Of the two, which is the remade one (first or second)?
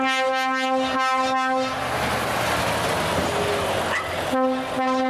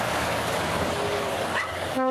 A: second